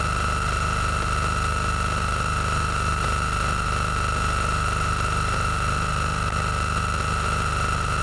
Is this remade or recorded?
recorded